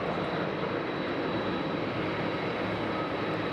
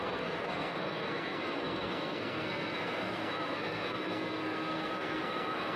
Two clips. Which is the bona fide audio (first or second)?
first